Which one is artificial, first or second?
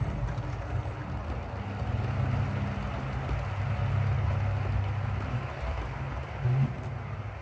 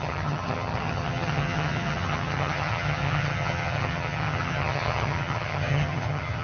second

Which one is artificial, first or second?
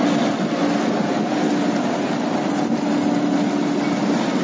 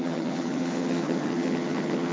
second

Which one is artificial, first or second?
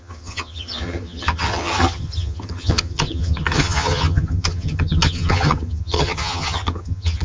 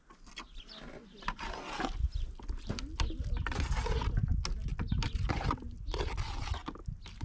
first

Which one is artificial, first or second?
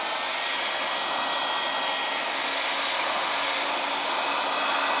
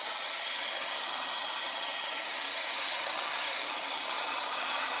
second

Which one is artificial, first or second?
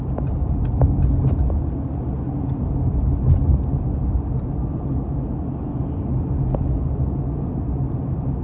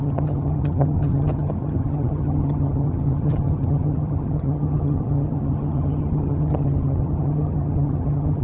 second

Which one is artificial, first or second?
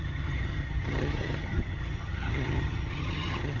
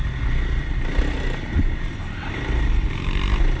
first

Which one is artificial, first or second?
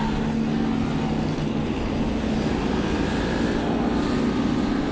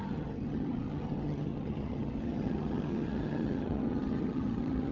second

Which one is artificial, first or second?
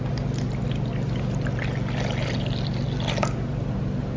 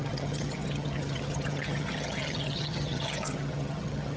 second